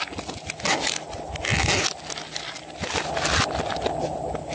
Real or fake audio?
real